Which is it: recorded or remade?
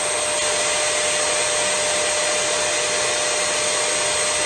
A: recorded